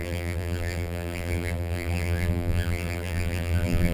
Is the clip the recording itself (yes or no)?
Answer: no